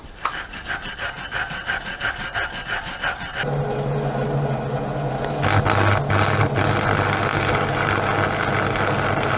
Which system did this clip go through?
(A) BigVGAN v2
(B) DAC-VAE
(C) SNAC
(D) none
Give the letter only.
D